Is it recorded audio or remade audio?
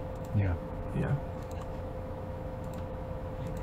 remade